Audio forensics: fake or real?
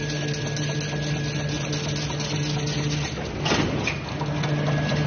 real